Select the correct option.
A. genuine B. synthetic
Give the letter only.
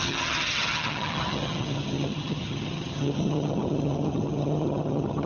B